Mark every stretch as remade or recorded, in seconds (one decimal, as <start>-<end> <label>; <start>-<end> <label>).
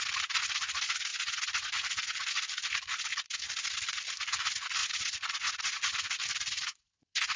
0.0-4.8 recorded; 4.8-5.7 remade; 5.7-7.4 recorded